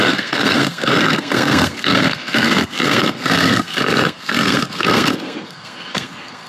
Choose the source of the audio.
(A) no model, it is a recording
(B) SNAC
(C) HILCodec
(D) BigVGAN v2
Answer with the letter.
B